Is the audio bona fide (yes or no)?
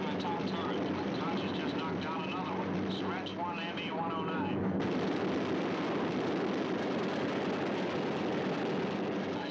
yes